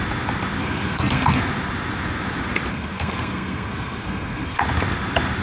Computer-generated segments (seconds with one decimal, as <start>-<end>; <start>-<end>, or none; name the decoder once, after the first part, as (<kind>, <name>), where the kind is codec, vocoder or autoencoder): 0.6-1.4 (codec, SNAC); 2.7-4.6